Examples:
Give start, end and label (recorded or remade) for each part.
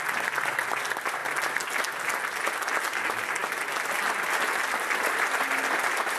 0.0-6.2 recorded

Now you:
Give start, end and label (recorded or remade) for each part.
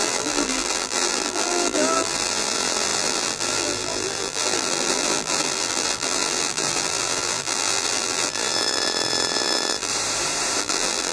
0.0-9.9 remade; 9.9-10.6 recorded; 10.6-11.1 remade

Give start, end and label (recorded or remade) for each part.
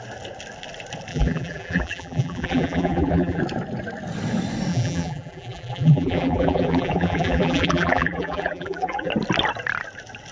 0.0-1.1 recorded; 1.1-3.4 remade; 3.4-4.7 recorded; 4.7-9.1 remade; 9.1-10.3 recorded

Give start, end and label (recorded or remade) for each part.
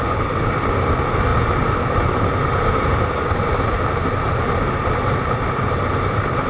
0.0-1.3 recorded; 1.3-4.9 remade; 4.9-6.5 recorded